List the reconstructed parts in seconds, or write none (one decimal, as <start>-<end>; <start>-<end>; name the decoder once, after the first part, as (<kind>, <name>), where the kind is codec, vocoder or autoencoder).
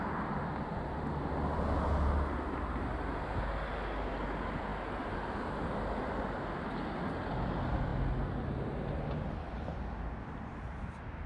none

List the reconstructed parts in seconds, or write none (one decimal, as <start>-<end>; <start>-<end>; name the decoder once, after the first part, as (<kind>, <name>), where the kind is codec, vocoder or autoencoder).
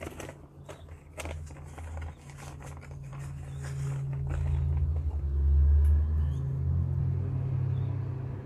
none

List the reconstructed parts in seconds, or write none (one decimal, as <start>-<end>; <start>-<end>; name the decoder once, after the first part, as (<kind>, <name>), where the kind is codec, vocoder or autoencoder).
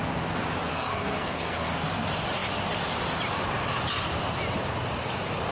0.7-1.7 (codec, SNAC)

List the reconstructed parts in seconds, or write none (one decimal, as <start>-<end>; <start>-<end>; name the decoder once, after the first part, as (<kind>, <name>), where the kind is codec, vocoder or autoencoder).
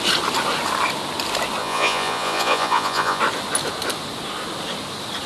1.6-3.2 (vocoder, Vocos)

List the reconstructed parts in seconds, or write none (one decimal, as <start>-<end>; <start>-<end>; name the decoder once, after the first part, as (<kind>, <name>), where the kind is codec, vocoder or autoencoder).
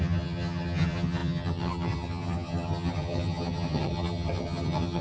0.0-5.0 (vocoder, HiFi-GAN)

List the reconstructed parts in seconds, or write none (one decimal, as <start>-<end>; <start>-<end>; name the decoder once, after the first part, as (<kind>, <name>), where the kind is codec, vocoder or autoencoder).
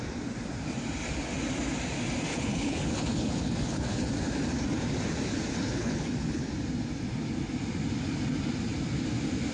2.3-4.1 (codec, HILCodec); 5.5-6.4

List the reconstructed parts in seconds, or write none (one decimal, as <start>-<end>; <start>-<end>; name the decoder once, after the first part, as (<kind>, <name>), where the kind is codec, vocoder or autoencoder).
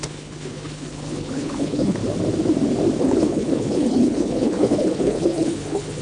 0.0-2.0 (codec, HILCodec); 3.0-6.0